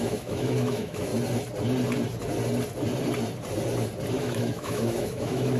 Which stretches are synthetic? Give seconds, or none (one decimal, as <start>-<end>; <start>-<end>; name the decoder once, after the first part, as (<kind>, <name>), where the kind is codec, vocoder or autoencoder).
0.0-1.1 (autoencoder, DAC-VAE); 4.1-5.6

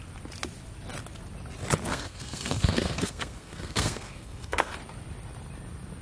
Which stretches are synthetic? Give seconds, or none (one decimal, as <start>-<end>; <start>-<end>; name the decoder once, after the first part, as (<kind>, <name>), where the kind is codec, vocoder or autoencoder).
1.9-4.7 (codec, SNAC)

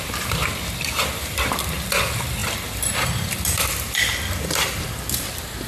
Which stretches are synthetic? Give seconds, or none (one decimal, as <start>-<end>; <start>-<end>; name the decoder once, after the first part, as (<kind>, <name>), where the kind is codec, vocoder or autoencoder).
0.0-0.4 (vocoder, BigVGAN v2); 1.2-5.7

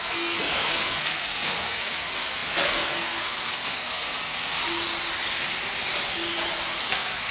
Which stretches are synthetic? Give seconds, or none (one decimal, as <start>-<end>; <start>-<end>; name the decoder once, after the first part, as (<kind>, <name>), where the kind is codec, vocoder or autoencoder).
0.0-4.6 (codec, SNAC); 6.8-7.3

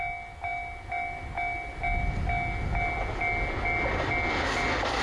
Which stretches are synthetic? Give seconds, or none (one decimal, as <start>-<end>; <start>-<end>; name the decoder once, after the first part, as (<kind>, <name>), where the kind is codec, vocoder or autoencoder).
none

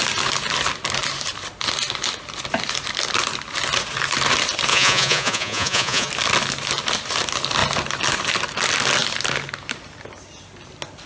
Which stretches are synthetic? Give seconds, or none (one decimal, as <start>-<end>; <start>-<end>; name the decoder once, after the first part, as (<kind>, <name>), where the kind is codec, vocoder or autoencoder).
4.7-6.1 (vocoder, Vocos)

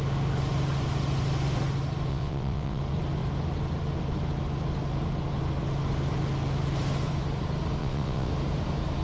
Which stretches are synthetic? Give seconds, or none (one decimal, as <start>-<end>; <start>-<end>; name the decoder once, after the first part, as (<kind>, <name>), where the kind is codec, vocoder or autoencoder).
2.1-2.8 (vocoder, WaveNeXt); 7.8-8.3